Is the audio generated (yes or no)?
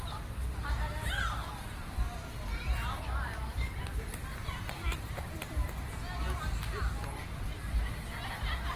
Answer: no